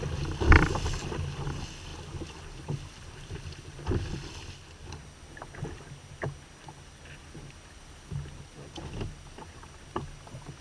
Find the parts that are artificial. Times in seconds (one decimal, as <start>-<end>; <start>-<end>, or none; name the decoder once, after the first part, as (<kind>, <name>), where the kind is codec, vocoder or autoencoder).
none